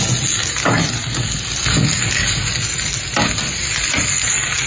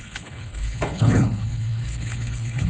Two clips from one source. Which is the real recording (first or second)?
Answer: first